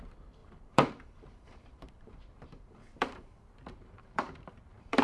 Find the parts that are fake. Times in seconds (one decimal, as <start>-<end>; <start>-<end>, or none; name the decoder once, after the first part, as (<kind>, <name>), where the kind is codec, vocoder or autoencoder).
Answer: 0.4-3.4 (vocoder, BigVGAN v2); 3.8-5.0